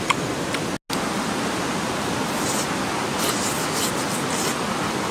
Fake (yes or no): no